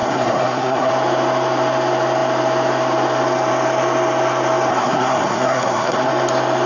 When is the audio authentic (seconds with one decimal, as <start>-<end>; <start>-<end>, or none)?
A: 0.9-4.7; 6.1-6.7